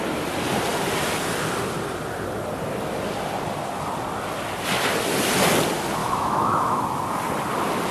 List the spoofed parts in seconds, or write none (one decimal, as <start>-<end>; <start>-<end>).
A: 6.0-6.8